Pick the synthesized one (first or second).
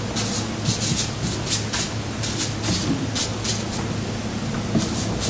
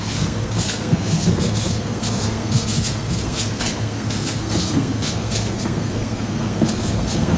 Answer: second